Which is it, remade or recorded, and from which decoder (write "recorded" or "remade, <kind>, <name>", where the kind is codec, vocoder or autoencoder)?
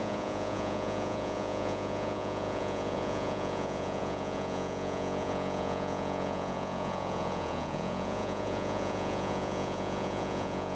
remade, vocoder, Vocos